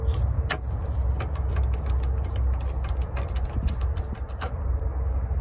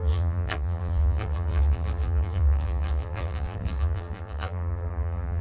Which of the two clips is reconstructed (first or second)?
second